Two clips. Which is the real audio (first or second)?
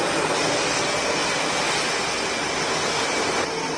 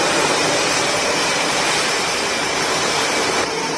first